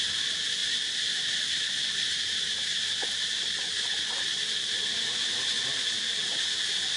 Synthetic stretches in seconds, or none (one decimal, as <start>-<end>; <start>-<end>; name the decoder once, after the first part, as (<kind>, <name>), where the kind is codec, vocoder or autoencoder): none